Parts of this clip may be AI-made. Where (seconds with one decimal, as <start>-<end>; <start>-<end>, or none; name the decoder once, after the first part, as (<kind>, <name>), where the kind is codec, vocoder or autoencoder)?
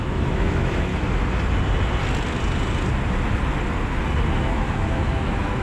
0.0-0.9 (autoencoder, DAC-VAE); 4.3-5.6